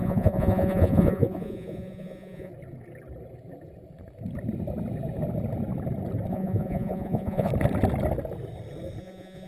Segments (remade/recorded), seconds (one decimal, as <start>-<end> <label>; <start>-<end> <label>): 0.0-2.5 remade; 2.5-6.3 recorded; 6.3-7.5 remade; 7.5-9.0 recorded; 9.0-9.5 remade